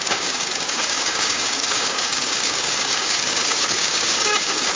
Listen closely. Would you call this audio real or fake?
fake